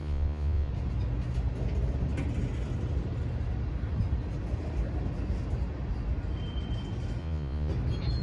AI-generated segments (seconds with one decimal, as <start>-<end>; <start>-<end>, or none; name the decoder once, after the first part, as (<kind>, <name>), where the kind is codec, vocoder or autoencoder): 0.0-0.7 (vocoder, Vocos); 7.2-7.7